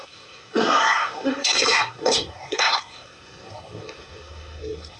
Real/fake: fake